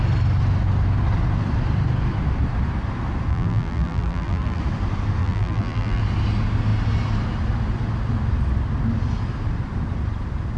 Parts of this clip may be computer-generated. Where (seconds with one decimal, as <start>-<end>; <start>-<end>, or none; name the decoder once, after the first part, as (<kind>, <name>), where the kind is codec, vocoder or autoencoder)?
3.3-4.6 (vocoder, BigVGAN v2); 5.2-6.0